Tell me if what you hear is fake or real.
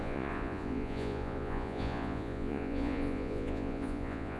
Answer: fake